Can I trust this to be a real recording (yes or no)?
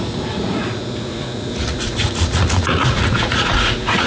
no